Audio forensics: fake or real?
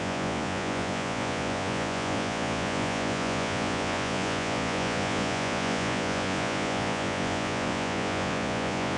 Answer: fake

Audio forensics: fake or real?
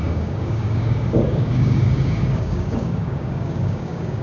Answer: fake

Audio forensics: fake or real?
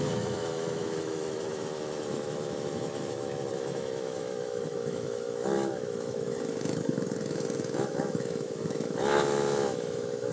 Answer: fake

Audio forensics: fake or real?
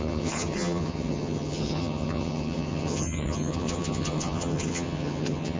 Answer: fake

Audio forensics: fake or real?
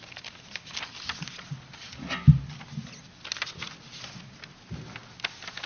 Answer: real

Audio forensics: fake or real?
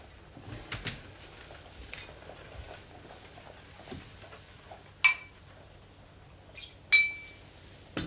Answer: real